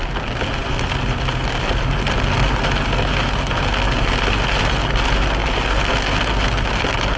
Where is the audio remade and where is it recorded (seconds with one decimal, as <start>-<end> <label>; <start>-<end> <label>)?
0.0-7.2 recorded